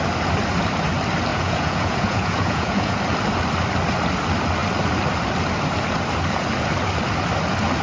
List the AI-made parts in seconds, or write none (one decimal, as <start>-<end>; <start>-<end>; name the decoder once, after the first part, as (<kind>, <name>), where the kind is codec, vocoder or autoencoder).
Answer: 1.3-3.0 (vocoder, Vocos)